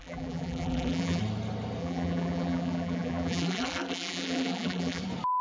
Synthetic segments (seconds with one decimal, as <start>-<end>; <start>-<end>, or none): 0.0-1.2; 1.8-5.0